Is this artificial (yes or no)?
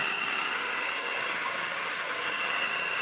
yes